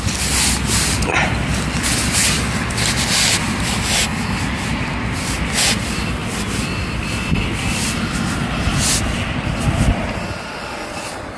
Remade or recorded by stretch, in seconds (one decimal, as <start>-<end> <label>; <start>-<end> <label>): 0.0-11.4 recorded